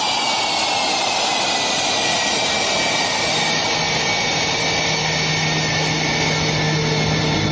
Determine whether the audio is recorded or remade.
recorded